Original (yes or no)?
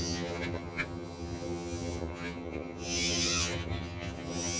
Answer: no